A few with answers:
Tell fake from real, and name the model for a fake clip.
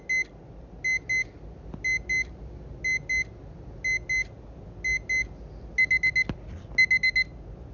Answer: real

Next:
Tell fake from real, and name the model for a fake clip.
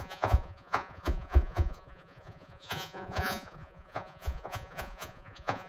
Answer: fake, vocoder, Vocos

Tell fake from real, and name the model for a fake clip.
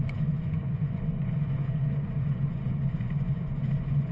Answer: fake, vocoder, Vocos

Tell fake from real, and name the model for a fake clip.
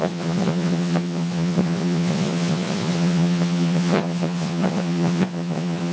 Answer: fake, vocoder, Vocos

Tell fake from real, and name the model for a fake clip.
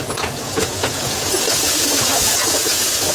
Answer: fake, vocoder, Vocos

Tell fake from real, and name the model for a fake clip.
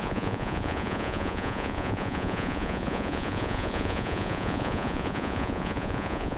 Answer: fake, vocoder, Vocos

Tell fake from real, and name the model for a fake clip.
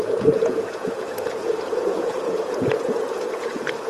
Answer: fake, vocoder, Vocos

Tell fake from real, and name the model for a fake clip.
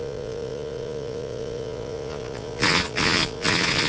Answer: fake, vocoder, Vocos